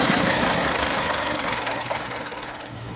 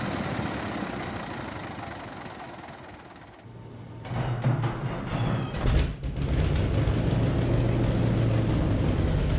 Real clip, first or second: second